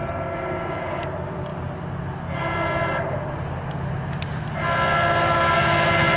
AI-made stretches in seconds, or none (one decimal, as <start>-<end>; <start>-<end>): none